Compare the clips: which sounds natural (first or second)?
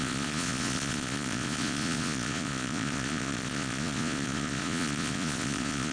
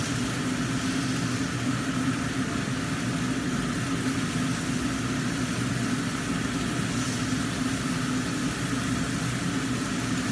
second